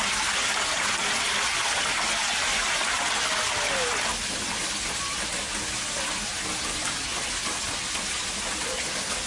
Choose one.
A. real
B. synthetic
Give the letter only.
A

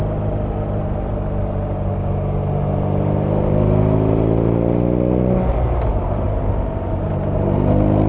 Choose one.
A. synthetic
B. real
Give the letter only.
B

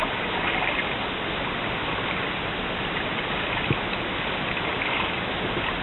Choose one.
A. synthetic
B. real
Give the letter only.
B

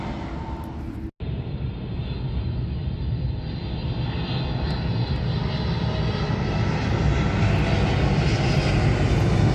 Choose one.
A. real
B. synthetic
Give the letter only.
A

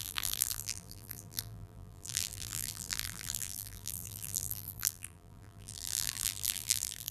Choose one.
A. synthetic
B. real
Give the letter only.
A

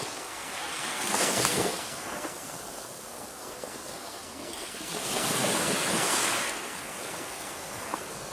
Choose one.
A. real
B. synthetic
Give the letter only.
B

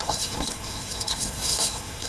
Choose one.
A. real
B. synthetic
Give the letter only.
B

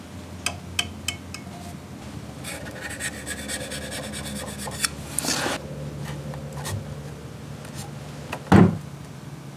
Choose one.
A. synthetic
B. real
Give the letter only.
B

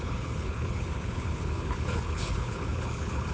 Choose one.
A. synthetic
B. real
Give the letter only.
A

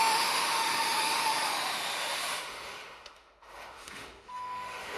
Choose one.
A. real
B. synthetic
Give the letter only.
B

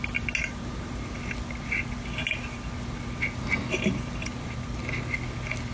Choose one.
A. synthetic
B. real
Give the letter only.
B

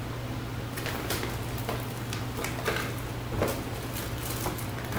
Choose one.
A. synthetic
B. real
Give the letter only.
B